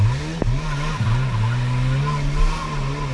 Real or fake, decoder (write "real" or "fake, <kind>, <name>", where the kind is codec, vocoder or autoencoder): real